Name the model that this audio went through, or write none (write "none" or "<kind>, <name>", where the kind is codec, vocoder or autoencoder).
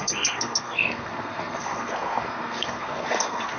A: codec, SNAC